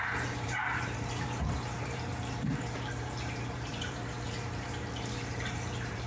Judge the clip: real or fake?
fake